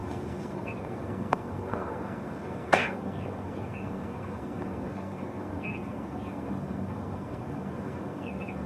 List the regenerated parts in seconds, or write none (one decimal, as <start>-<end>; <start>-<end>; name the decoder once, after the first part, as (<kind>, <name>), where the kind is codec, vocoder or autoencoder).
0.0-8.7 (codec, SNAC)